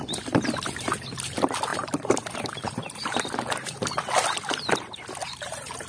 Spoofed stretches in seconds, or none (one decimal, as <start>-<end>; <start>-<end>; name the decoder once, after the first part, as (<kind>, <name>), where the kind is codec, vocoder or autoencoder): 1.7-3.9 (vocoder, BigVGAN v2); 5.2-5.9